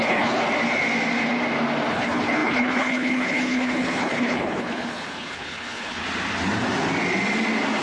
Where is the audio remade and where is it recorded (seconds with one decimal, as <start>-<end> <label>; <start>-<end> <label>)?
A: 0.0-0.4 remade; 0.4-1.9 recorded; 1.9-6.0 remade; 6.0-7.8 recorded